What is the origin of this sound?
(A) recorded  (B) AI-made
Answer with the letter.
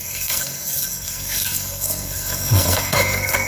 B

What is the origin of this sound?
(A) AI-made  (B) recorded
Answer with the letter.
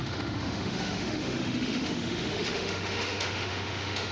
A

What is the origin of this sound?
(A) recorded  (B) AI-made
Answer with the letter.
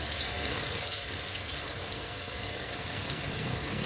B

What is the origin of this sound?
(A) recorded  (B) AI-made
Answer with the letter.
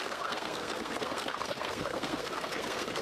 B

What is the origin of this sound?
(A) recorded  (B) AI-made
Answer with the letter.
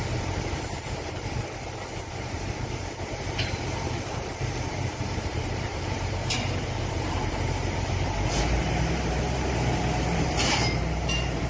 B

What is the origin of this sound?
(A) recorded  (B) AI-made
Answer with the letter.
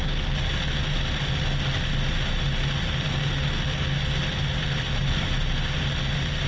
A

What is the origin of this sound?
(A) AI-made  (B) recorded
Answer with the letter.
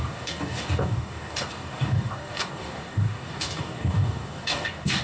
A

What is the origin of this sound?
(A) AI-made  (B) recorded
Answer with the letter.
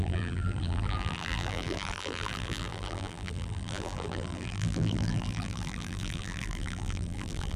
A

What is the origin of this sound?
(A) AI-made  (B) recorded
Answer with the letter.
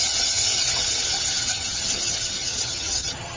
A